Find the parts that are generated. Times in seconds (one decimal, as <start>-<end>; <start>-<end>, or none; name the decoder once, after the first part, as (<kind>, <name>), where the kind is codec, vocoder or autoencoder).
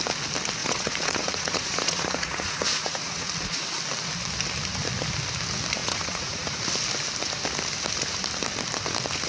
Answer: 0.6-3.3 (vocoder, Vocos); 5.8-6.6